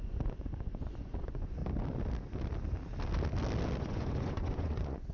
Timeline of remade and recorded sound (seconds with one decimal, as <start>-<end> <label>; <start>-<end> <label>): 0.0-1.6 remade; 1.6-3.8 recorded; 3.8-5.1 remade